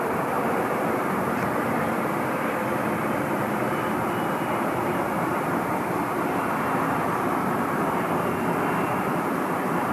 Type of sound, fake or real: fake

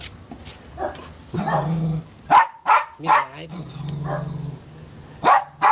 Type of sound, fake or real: real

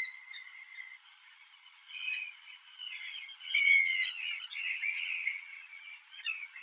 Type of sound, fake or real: fake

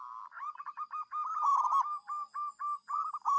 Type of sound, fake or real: real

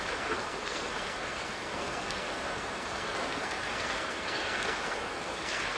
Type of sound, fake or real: fake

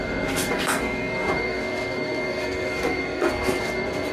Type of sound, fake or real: fake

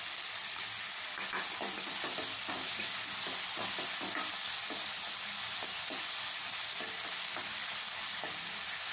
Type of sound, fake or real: real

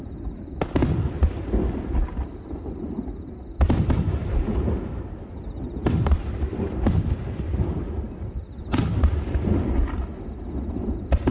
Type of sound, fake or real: real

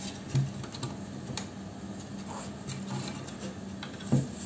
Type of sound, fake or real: real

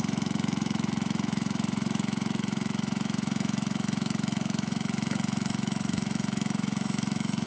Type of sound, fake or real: fake